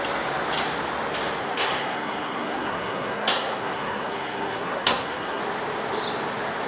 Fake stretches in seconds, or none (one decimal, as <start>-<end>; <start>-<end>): 1.4-5.4